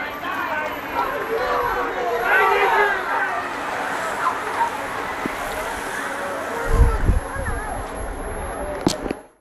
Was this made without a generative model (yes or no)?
yes